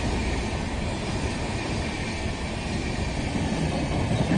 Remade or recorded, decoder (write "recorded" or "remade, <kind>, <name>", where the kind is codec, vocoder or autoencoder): recorded